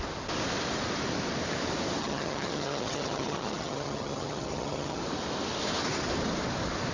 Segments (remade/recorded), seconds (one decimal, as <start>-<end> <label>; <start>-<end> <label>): 0.0-2.0 recorded; 2.0-5.0 remade; 5.0-6.9 recorded